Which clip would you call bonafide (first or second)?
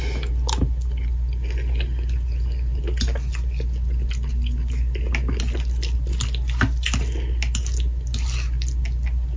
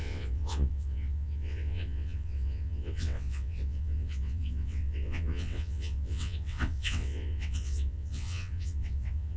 first